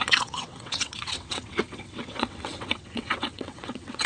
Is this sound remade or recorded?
remade